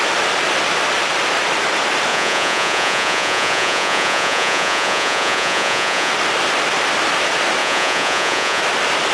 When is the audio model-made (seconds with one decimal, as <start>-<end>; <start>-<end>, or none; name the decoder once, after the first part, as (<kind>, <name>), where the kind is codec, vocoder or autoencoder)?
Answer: 2.1-6.1 (vocoder, Vocos); 7.6-8.6